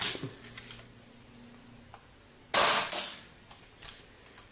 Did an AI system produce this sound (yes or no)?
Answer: no